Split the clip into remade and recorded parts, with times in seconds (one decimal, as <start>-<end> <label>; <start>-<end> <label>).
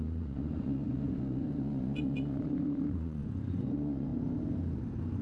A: 0.0-4.1 remade; 4.1-5.2 recorded